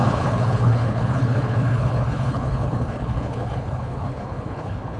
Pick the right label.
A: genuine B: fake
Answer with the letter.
B